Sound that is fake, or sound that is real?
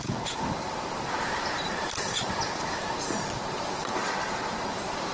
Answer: fake